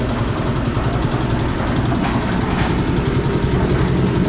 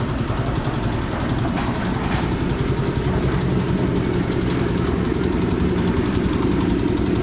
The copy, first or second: second